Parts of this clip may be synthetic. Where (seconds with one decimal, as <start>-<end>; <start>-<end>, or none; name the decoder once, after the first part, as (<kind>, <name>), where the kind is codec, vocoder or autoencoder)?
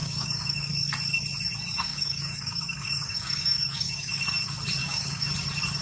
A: 0.0-0.7 (codec, DAC); 1.9-4.2; 4.8-5.3